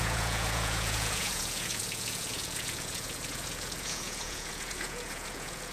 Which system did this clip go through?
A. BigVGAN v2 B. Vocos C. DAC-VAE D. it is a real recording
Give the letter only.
B